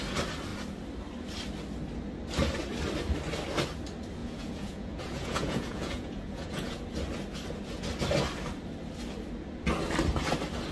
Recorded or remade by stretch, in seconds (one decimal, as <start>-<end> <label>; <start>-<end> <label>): 0.0-4.2 recorded; 4.2-6.8 remade; 6.8-10.7 recorded